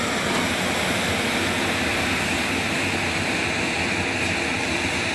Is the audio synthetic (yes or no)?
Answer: no